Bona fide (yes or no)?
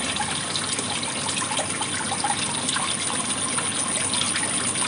yes